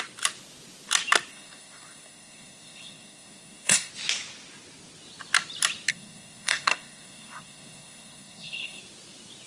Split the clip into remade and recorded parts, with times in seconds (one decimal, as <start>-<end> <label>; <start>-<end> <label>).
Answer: 0.0-1.3 recorded; 1.3-3.9 remade; 3.9-5.9 recorded; 5.9-8.8 remade; 8.8-9.5 recorded

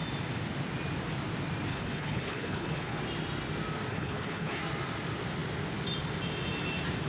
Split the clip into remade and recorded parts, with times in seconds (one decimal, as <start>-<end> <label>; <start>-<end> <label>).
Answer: 0.0-1.7 recorded; 1.7-3.0 remade; 3.0-3.9 recorded; 3.9-4.6 remade; 4.6-7.1 recorded